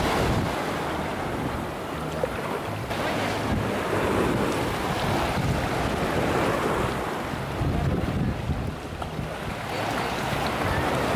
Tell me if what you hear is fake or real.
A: real